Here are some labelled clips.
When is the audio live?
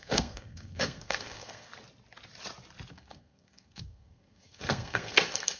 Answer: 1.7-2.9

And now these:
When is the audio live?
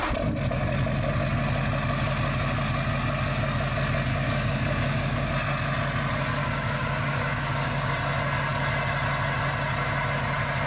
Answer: 0.0-4.1; 5.3-6.4; 7.9-10.7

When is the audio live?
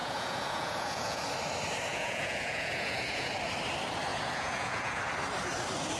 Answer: 1.3-1.9; 3.3-4.1; 5.0-6.0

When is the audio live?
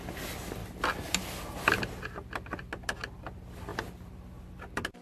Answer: 0.0-5.0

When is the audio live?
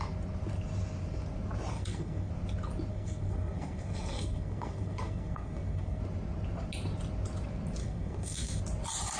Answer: 0.0-1.7; 2.3-2.9; 6.0-7.8; 8.6-9.2